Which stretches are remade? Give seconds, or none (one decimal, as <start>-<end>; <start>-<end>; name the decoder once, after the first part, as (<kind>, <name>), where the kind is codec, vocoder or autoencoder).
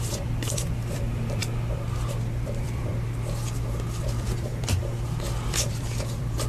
0.0-1.4 (vocoder, BigVGAN v2); 2.1-2.9; 4.0-4.9; 5.5-6.5